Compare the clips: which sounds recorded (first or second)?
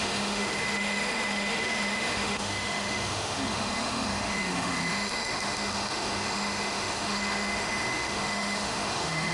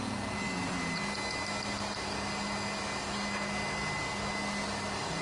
second